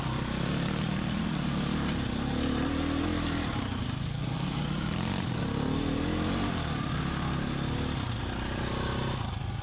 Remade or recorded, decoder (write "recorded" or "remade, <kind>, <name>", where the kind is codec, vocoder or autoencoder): recorded